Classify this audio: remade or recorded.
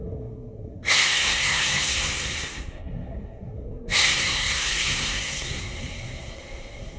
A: remade